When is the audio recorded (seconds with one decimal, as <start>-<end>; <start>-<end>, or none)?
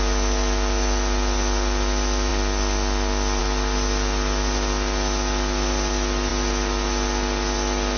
0.0-8.0